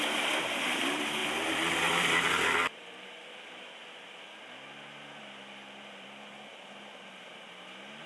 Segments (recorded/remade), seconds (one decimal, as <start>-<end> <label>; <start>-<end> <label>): 0.0-8.1 recorded

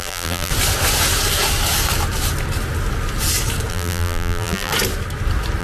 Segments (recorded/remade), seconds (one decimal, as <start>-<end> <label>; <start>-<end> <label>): 0.0-0.5 remade; 0.5-3.7 recorded; 3.7-4.7 remade; 4.7-5.6 recorded

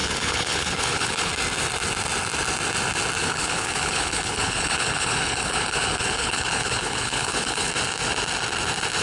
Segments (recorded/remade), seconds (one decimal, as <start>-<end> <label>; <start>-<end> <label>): 0.0-1.3 remade; 1.3-3.2 recorded; 3.2-7.7 remade; 7.7-9.0 recorded

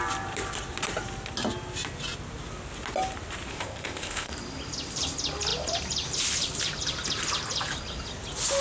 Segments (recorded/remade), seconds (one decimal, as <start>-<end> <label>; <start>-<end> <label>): 0.0-3.5 recorded; 3.5-4.3 remade; 4.3-8.6 recorded

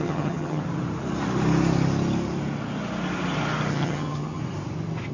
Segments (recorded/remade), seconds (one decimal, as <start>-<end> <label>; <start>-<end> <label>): 0.0-0.6 remade; 0.6-3.7 recorded; 3.7-4.4 remade; 4.4-5.1 recorded